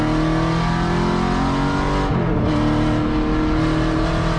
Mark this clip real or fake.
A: real